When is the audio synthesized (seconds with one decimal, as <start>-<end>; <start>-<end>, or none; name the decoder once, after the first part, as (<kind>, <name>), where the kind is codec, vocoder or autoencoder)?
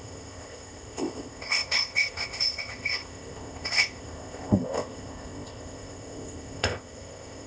0.0-7.5 (codec, ZipCodec)